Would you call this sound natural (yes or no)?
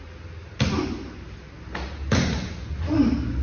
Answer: yes